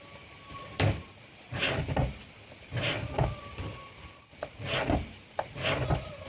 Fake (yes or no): no